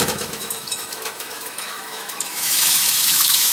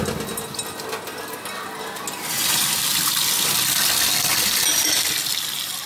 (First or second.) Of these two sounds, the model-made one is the first